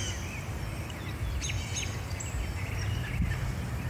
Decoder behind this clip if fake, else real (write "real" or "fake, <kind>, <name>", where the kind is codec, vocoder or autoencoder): real